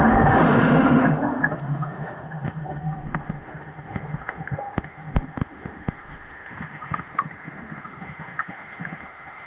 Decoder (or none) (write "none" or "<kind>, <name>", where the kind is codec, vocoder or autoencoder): autoencoder, DAC-VAE